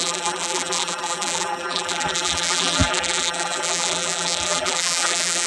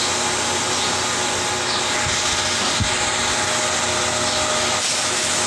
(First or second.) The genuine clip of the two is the second